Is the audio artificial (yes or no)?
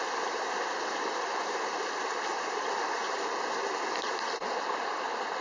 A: yes